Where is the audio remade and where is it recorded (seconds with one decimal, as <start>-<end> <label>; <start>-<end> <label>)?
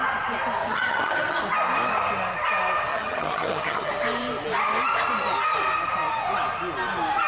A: 0.0-0.6 recorded; 0.6-1.4 remade; 1.4-2.9 recorded; 2.9-3.9 remade; 3.9-7.3 recorded